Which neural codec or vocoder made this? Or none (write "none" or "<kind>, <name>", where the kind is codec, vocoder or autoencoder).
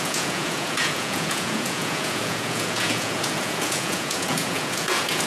vocoder, Vocos